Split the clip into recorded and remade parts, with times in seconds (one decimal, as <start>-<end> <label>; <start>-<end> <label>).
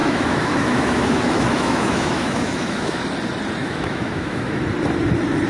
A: 0.0-3.0 remade; 3.0-3.6 recorded; 3.6-4.6 remade; 4.6-5.5 recorded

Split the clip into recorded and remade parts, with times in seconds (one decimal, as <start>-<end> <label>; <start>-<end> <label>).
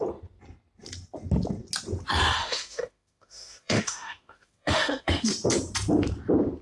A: 0.0-2.4 recorded; 2.4-5.3 remade; 5.3-6.6 recorded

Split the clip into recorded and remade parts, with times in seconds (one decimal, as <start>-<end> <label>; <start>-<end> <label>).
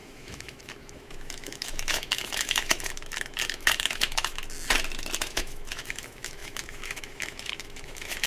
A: 0.0-4.4 remade; 4.4-5.2 recorded; 5.2-8.3 remade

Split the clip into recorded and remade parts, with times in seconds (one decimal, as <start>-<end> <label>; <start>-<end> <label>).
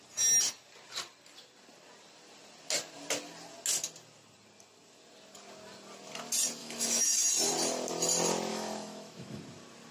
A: 0.0-6.6 recorded; 6.6-7.3 remade; 7.3-8.5 recorded; 8.5-9.4 remade; 9.4-9.9 recorded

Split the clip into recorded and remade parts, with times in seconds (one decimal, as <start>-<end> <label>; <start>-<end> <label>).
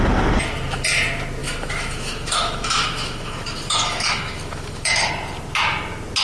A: 0.0-1.4 recorded; 1.4-5.1 remade; 5.1-6.2 recorded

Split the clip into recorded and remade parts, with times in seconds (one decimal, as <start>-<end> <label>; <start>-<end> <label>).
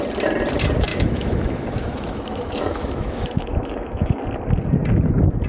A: 0.0-0.9 recorded; 0.9-4.2 remade; 4.2-5.5 recorded